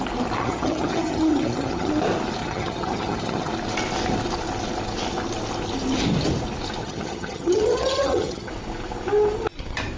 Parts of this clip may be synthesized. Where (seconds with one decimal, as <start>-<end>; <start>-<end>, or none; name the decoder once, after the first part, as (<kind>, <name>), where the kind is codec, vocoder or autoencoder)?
0.4-1.9 (vocoder, HiFi-GAN); 2.4-3.5; 6.8-8.5